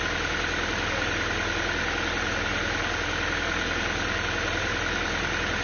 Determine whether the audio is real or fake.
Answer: real